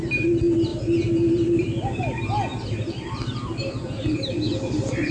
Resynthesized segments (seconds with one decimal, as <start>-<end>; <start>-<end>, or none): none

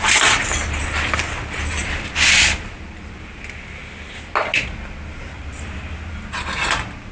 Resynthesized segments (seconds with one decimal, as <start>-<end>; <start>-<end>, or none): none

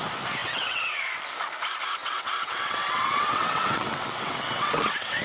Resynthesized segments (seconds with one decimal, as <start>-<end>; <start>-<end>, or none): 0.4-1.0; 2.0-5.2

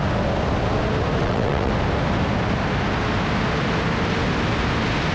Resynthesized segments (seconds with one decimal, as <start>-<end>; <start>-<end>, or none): 1.2-1.7

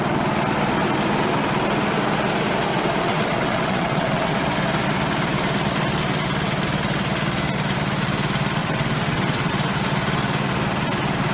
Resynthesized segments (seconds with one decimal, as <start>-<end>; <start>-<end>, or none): 3.0-4.3; 8.6-9.5

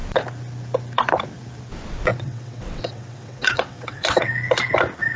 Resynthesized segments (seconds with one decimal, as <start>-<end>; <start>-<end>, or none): 2.1-4.3

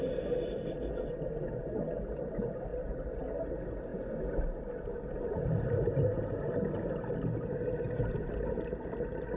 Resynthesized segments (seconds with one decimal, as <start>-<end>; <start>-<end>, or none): none

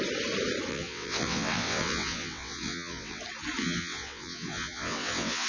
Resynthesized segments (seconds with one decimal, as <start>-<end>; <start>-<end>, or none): 0.7-3.2; 3.6-5.5